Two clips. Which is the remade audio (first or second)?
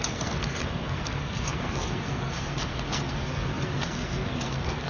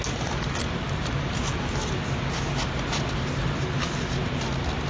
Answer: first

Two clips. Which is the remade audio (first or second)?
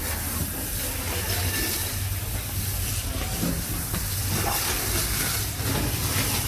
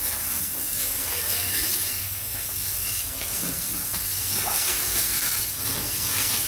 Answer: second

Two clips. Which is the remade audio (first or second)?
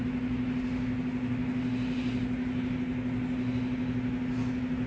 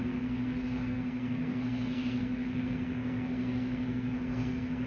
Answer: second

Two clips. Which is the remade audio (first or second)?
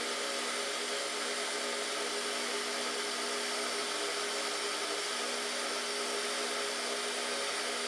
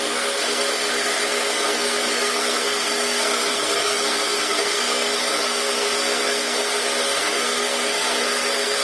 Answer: second